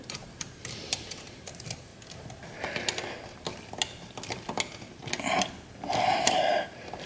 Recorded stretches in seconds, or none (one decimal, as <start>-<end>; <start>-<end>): 1.9-6.2